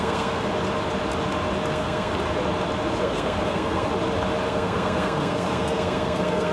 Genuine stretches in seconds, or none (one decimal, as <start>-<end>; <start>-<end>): 0.5-1.7; 2.1-3.0; 3.9-4.5